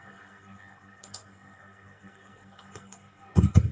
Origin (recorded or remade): remade